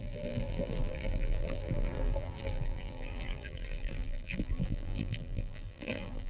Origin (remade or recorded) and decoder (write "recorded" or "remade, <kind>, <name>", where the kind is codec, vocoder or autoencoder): remade, vocoder, BigVGAN v2